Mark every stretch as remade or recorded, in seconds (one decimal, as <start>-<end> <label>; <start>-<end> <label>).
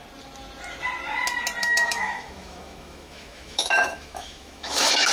0.0-1.6 recorded; 1.6-5.1 remade